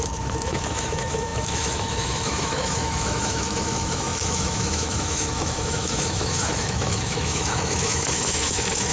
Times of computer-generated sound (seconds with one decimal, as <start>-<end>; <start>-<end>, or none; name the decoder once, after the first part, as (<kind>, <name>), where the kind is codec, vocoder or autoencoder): 0.0-8.9 (autoencoder, DAC-VAE)